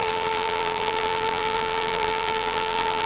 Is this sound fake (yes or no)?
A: yes